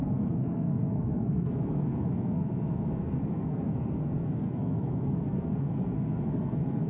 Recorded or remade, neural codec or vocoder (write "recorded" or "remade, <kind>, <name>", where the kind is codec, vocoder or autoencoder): remade, codec, SNAC